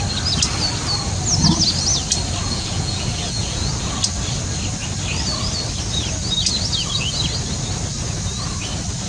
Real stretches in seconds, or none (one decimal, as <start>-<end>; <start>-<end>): 0.0-2.4; 3.9-9.1